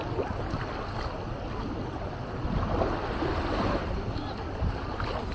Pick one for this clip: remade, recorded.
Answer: recorded